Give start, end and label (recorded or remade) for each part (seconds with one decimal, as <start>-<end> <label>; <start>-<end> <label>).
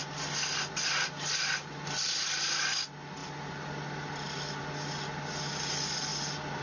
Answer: 0.0-6.6 recorded